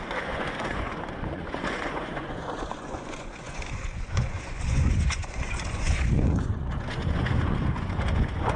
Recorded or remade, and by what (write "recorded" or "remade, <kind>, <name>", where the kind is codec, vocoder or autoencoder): remade, vocoder, Vocos